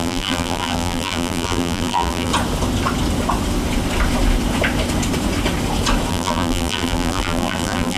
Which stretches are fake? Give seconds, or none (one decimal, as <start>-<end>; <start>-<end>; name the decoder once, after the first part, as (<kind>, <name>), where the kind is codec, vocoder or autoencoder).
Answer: 0.0-2.3 (vocoder, BigVGAN v2); 6.1-8.0